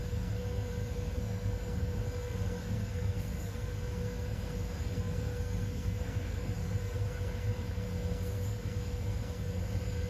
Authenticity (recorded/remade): remade